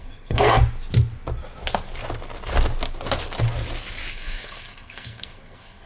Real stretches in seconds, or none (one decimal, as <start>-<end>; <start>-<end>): 0.6-4.1